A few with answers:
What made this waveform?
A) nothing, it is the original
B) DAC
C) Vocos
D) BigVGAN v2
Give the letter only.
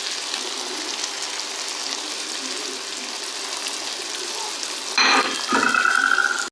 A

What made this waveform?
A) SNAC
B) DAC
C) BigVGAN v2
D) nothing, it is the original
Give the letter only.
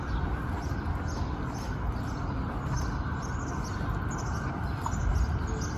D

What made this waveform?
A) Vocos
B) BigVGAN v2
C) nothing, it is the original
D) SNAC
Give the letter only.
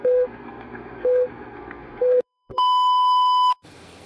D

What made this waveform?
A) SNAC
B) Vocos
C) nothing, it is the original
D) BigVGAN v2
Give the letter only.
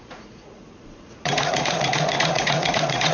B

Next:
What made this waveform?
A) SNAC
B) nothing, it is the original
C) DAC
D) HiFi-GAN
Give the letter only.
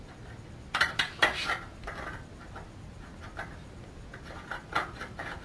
B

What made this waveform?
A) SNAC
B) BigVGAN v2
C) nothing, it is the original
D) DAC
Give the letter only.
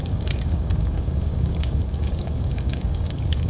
D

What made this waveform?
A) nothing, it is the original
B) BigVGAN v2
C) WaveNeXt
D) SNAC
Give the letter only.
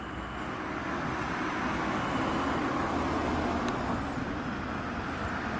A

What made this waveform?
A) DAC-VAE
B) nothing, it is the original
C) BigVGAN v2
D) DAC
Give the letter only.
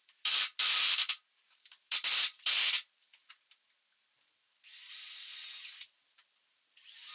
C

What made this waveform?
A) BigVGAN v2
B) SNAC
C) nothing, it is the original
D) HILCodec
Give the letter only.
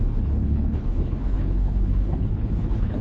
D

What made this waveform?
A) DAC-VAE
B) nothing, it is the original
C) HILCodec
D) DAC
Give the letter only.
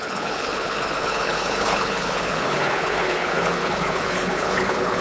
C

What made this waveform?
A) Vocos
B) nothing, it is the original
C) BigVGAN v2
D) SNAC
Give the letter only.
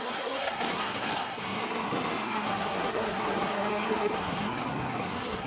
D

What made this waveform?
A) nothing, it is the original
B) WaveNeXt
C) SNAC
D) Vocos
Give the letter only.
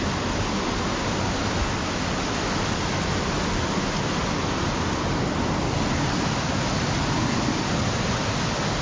A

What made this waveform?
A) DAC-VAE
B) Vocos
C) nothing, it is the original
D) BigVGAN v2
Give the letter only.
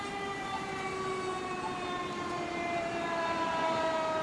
D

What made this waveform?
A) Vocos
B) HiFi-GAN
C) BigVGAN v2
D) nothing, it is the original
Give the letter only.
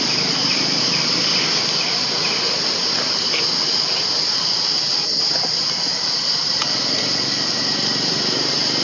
D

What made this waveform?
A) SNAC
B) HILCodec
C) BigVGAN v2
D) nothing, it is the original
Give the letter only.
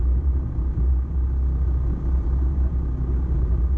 D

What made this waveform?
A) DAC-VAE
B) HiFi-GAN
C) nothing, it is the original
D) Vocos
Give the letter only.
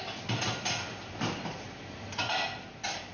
C